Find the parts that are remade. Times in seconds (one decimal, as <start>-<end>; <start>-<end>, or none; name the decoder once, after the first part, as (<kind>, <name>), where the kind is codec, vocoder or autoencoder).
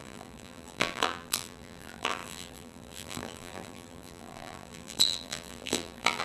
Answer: 0.0-6.2 (vocoder, BigVGAN v2)